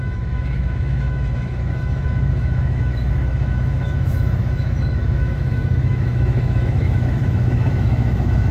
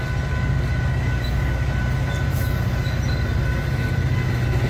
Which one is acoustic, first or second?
second